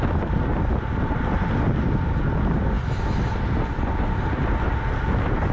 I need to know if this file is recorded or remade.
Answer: recorded